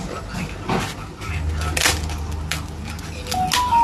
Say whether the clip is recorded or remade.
recorded